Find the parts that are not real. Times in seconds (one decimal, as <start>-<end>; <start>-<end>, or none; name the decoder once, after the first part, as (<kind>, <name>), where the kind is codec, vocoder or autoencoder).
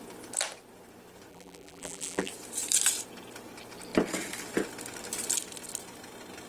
1.3-2.3 (vocoder, BigVGAN v2)